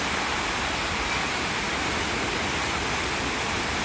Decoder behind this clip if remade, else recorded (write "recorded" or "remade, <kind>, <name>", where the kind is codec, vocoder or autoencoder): recorded